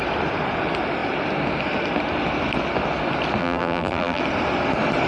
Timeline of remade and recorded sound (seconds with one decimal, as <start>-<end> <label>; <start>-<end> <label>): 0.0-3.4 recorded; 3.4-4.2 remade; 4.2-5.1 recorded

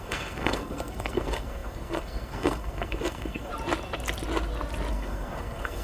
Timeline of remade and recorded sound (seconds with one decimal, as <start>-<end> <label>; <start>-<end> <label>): 0.0-3.5 remade; 3.5-4.9 recorded; 4.9-5.8 remade

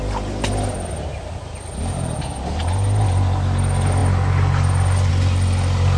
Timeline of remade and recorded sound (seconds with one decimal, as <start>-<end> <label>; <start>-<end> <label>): 0.0-6.0 recorded

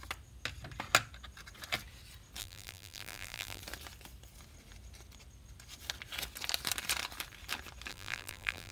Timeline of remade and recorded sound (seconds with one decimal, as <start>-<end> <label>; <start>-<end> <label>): 0.0-2.4 recorded; 2.4-3.6 remade; 3.6-7.9 recorded; 7.9-8.7 remade

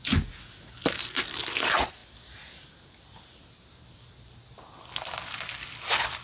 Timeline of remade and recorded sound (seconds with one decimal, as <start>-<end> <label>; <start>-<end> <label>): 0.0-6.2 recorded